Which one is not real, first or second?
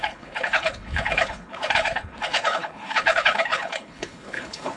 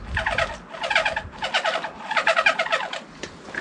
first